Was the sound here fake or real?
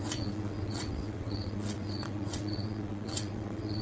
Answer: fake